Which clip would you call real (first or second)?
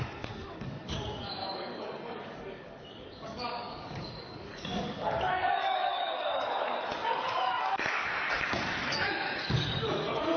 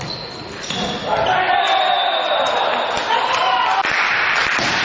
second